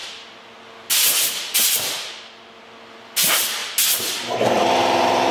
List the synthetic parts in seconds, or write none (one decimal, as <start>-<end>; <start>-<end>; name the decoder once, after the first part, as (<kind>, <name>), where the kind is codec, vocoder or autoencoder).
3.2-3.6 (vocoder, BigVGAN v2); 4.1-5.3